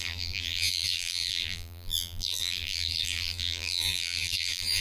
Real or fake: fake